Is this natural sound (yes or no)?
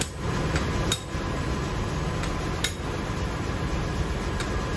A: yes